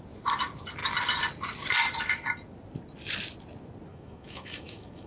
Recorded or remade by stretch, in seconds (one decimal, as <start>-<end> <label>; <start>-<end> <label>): 0.0-3.9 recorded; 3.9-5.1 remade